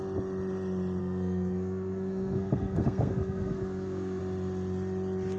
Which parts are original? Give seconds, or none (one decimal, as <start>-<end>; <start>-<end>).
0.0-1.0; 4.2-5.4

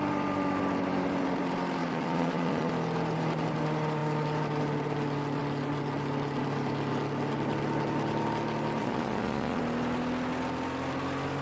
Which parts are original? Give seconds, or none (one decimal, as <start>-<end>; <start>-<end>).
0.0-1.8; 2.7-8.8; 9.6-11.4

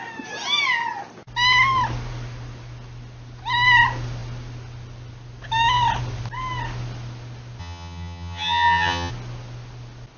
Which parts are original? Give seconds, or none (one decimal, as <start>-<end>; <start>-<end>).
0.0-7.6; 9.1-10.2

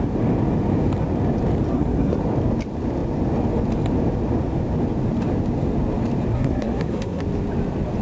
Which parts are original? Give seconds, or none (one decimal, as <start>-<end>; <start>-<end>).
0.0-1.7; 2.2-6.3; 7.2-8.0

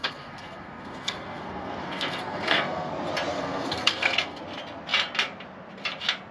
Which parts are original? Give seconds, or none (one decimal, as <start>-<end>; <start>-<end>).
2.9-3.3; 4.4-6.3

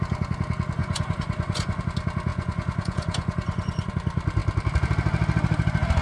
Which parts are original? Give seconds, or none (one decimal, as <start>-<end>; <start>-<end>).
0.0-0.8; 1.8-2.3; 3.9-6.0

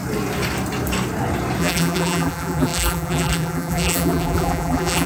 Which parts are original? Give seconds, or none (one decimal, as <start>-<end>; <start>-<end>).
0.0-1.6

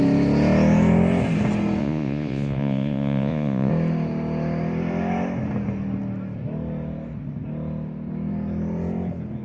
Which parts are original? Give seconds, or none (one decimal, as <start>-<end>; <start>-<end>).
0.0-1.8; 3.7-9.4